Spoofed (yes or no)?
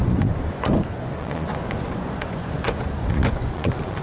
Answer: yes